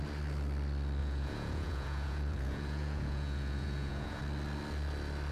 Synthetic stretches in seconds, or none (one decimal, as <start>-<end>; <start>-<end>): 1.0-4.2